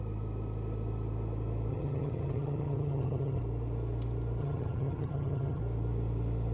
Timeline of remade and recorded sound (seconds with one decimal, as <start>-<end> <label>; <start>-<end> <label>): 0.0-1.7 recorded; 1.7-3.4 remade; 3.4-4.4 recorded; 4.4-5.6 remade; 5.6-6.5 recorded